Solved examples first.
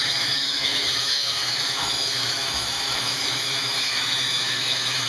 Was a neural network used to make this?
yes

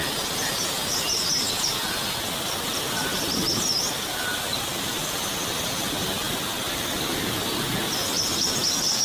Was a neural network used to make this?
no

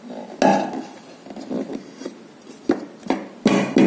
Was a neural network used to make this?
no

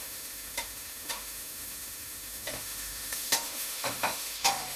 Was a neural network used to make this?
yes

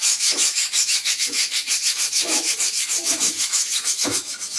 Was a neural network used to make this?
yes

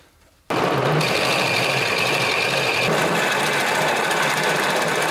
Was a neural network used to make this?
no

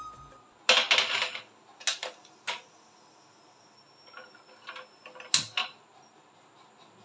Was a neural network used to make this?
no